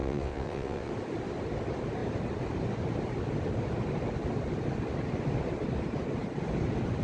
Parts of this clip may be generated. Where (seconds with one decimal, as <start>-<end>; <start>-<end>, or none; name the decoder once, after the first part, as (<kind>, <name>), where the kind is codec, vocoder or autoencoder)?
0.0-0.9 (vocoder, WaveNeXt)